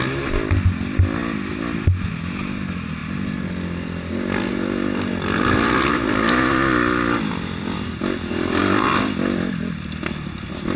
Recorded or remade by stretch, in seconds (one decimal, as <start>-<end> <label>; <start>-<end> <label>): 0.0-10.8 recorded